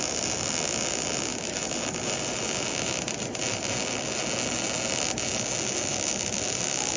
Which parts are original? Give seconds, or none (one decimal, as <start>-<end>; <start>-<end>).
0.0-1.3; 4.2-5.9; 6.6-7.0